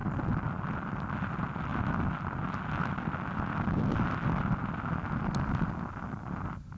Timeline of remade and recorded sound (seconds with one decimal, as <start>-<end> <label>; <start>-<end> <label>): 0.0-6.8 recorded